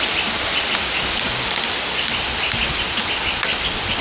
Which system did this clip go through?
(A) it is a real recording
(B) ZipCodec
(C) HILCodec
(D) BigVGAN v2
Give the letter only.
A